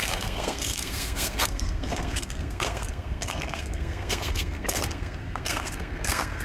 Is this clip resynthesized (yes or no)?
yes